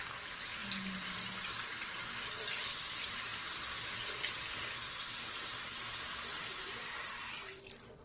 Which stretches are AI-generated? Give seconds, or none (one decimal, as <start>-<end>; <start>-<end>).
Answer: none